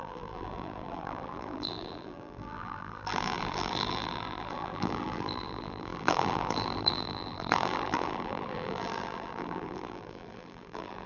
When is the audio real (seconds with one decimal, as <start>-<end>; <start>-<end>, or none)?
none